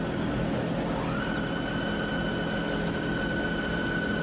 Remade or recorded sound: recorded